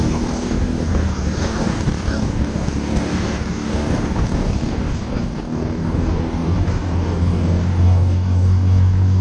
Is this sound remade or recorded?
remade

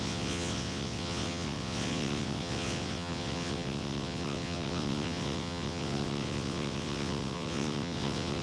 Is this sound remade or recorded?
remade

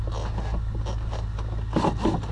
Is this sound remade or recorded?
recorded